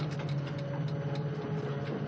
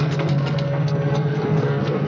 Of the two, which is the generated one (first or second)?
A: second